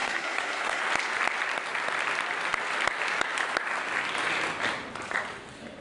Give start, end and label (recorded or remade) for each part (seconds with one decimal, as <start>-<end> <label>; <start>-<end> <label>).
0.0-0.8 remade; 0.8-5.8 recorded